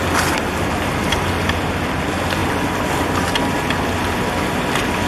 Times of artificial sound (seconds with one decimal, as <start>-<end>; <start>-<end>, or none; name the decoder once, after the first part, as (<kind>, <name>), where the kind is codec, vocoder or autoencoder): none